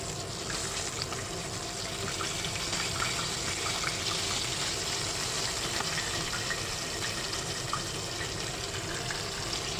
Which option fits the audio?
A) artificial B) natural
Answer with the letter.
A